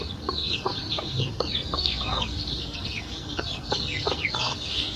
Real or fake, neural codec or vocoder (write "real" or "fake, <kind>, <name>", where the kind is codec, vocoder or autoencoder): fake, codec, SNAC